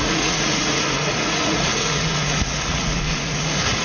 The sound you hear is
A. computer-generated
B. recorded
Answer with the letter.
A